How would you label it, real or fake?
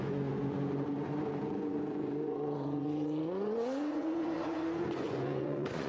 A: fake